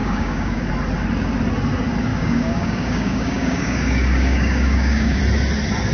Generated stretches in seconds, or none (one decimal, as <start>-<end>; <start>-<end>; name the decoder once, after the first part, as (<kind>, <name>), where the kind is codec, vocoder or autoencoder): 0.0-0.7 (codec, DAC); 2.1-5.2